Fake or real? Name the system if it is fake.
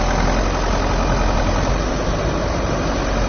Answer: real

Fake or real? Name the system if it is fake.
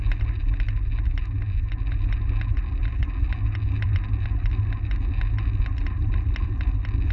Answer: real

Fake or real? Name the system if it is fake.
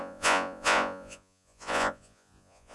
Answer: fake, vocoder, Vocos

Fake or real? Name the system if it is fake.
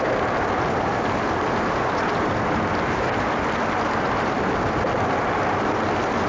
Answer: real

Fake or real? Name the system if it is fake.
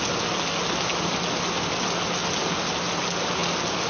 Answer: real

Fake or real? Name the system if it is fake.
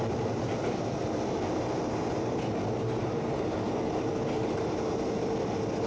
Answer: fake, vocoder, BigVGAN v2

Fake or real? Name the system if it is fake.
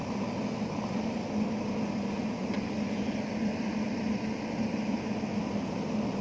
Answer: real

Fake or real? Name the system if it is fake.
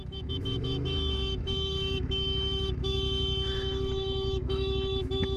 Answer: fake, autoencoder, DAC-VAE